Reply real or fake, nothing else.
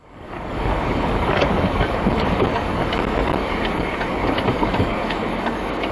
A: fake